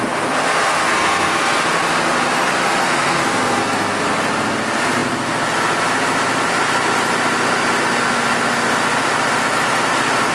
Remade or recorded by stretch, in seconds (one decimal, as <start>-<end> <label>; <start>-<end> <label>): 0.0-0.9 recorded; 0.9-1.6 remade; 1.6-2.8 recorded; 2.8-4.0 remade; 4.0-10.3 recorded